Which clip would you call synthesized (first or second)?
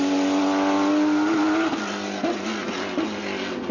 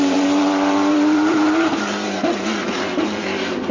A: second